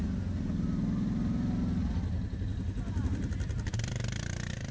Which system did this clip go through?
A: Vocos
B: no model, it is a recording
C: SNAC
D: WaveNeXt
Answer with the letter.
B